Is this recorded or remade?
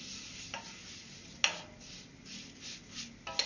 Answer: recorded